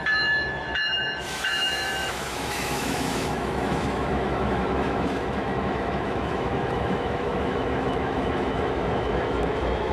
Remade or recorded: remade